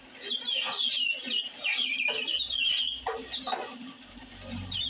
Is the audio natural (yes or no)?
yes